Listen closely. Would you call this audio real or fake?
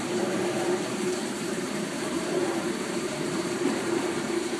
fake